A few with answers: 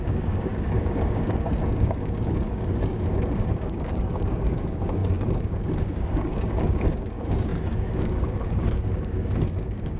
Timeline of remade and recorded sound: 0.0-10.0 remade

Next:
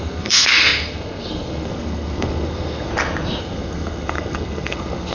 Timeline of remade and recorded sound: 0.0-2.9 remade; 2.9-3.4 recorded; 3.4-5.1 remade